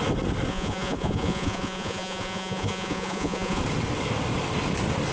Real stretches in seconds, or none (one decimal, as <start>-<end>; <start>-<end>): 0.0-0.5; 3.6-5.1